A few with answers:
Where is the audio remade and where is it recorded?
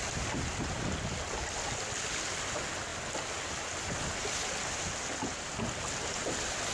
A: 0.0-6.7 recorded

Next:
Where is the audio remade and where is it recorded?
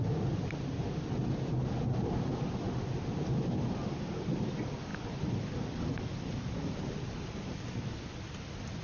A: 0.0-8.8 recorded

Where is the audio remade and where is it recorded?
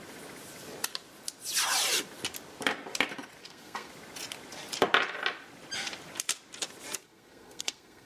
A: 0.0-3.4 recorded; 3.4-3.9 remade; 3.9-7.0 recorded; 7.0-8.1 remade